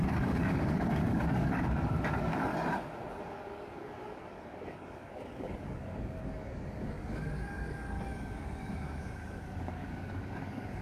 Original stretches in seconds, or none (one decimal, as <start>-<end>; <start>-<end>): 2.5-3.1